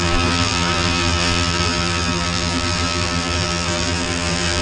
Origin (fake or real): fake